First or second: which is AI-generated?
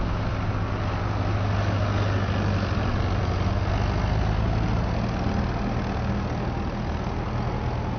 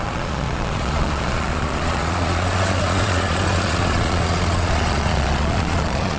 second